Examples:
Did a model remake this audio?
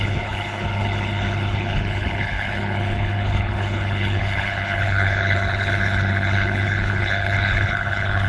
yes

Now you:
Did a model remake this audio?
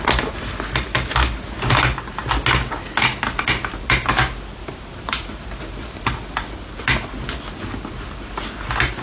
no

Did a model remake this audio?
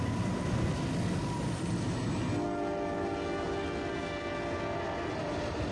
no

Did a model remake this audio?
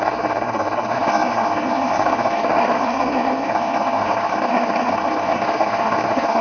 yes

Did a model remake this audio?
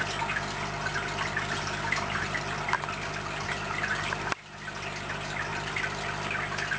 no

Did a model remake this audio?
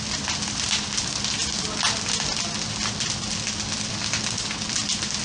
no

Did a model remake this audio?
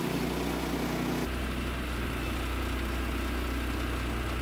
no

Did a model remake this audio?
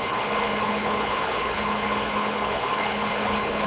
yes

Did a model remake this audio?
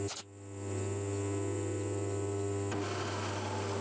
no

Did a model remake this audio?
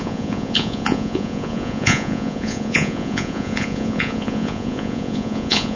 yes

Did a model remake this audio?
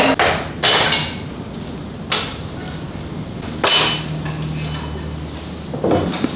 no